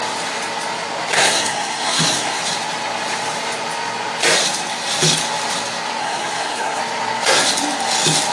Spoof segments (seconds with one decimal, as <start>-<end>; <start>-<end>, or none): 1.1-2.4; 6.0-6.8